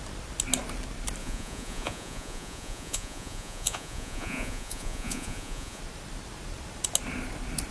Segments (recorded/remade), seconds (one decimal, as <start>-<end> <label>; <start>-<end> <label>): 0.0-1.2 recorded; 1.2-5.8 remade; 5.8-7.7 recorded